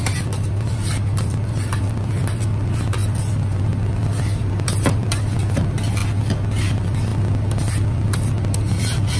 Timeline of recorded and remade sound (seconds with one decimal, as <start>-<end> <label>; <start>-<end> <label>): 0.0-6.0 remade; 6.0-6.6 recorded; 6.6-7.1 remade; 7.1-7.6 recorded; 7.6-9.2 remade